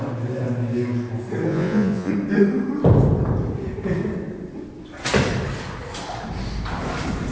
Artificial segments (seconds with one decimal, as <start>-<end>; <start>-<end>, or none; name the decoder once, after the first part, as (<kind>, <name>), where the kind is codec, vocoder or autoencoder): 1.5-2.1 (vocoder, Vocos)